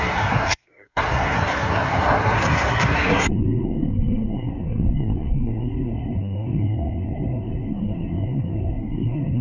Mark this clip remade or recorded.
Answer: remade